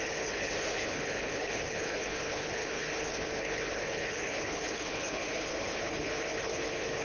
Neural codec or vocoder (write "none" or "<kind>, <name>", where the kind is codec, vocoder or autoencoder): codec, HILCodec